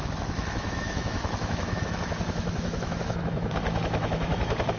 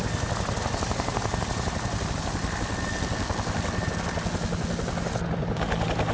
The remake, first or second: first